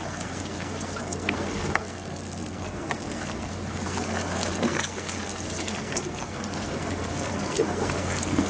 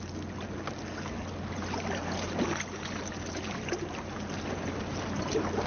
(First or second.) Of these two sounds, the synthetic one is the first